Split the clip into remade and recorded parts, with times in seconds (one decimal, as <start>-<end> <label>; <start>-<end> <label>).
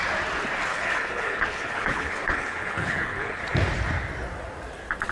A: 0.0-0.7 recorded; 0.7-3.4 remade; 3.4-5.1 recorded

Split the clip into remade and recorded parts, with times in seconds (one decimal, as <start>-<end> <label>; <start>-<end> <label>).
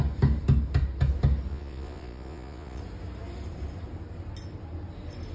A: 0.0-1.5 recorded; 1.5-2.8 remade; 2.8-5.3 recorded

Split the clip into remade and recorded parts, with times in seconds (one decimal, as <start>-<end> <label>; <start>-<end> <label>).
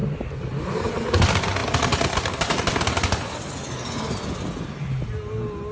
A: 0.0-5.7 recorded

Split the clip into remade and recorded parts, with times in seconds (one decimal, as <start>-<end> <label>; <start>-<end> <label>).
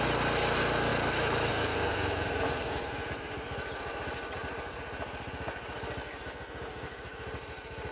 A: 0.0-0.9 recorded; 0.9-1.5 remade; 1.5-7.9 recorded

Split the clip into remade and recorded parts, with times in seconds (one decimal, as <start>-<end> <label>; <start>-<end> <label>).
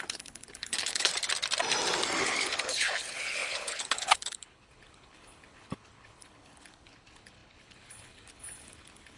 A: 0.0-1.1 remade; 1.1-2.2 recorded; 2.2-9.2 remade